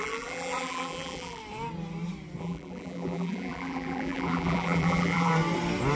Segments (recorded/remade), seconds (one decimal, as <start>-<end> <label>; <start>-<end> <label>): 0.0-1.4 remade; 1.4-2.4 recorded; 2.4-5.3 remade; 5.3-6.0 recorded